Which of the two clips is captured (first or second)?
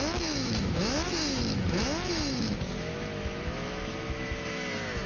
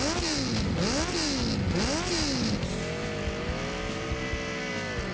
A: second